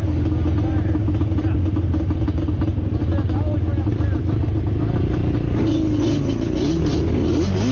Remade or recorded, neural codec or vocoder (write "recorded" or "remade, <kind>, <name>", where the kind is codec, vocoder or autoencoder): recorded